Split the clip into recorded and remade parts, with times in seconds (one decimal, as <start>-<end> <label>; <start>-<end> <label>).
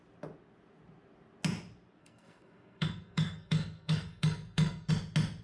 0.0-2.0 recorded; 2.0-4.9 remade; 4.9-5.4 recorded